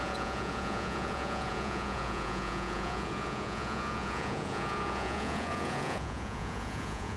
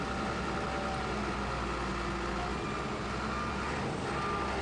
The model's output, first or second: first